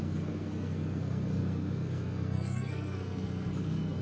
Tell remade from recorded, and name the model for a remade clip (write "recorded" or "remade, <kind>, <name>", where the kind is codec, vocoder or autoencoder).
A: remade, codec, SNAC